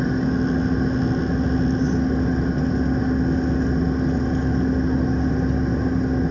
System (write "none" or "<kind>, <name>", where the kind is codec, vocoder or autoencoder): none